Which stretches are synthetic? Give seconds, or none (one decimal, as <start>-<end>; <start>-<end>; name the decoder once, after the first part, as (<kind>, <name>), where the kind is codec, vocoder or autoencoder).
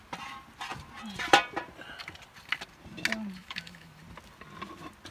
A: 3.4-4.0 (autoencoder, DAC-VAE)